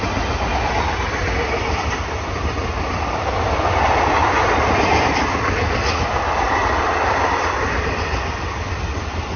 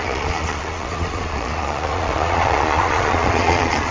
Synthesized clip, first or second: second